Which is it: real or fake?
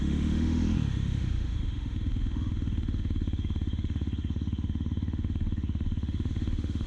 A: fake